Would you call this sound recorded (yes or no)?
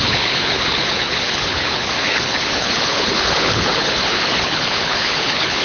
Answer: no